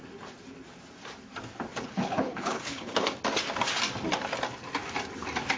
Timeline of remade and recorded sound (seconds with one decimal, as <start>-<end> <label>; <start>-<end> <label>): 0.0-1.7 recorded; 1.7-3.1 remade; 3.1-5.6 recorded